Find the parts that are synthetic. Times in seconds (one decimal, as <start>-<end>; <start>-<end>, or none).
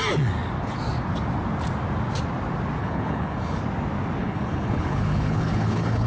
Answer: 2.8-3.6; 4.2-6.1